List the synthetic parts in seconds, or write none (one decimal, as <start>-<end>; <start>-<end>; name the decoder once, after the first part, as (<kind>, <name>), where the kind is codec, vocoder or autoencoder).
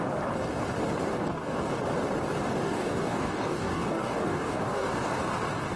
1.1-1.8 (codec, DAC); 2.4-5.1